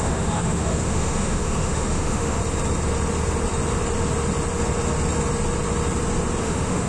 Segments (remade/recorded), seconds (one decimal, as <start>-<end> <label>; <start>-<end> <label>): 0.0-2.4 remade; 2.4-6.4 recorded; 6.4-6.9 remade